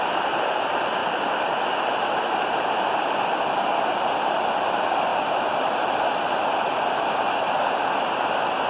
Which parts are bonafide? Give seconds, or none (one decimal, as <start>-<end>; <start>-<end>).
0.0-8.7